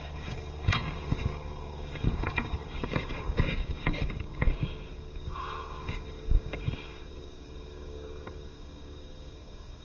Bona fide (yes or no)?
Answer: no